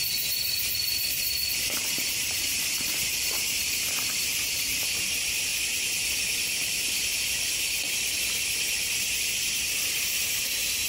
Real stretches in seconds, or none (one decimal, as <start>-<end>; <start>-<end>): 5.5-10.2